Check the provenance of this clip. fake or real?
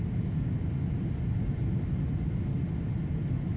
real